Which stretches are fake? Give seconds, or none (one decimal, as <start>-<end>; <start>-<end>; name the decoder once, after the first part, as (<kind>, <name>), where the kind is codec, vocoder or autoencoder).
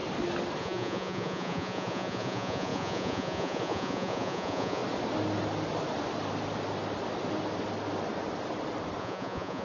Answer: 0.6-4.8 (vocoder, Vocos); 9.0-9.6